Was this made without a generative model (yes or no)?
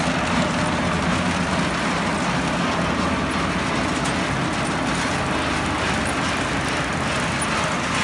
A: yes